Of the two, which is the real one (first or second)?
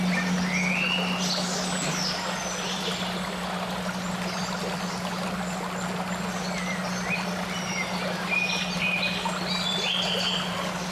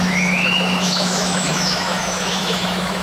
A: first